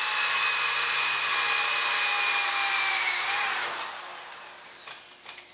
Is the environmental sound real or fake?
real